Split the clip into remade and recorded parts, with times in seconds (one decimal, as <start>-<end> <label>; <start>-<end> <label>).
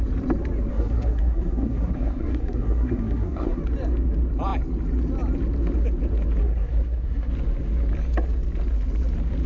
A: 0.0-0.7 recorded; 0.7-3.6 remade; 3.6-6.4 recorded; 6.4-7.3 remade; 7.3-9.5 recorded